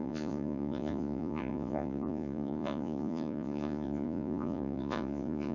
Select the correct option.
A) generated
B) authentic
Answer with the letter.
A